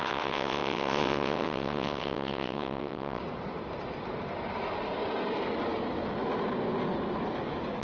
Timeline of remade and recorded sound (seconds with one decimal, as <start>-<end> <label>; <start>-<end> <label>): 0.0-3.2 remade; 3.2-7.8 recorded